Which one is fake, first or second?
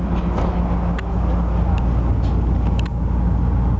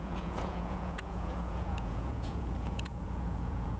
second